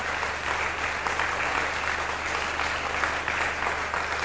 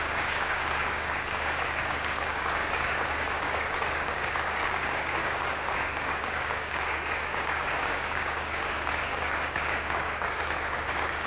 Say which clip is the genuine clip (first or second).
first